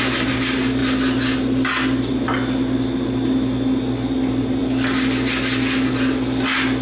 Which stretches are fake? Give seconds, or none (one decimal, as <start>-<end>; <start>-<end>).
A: none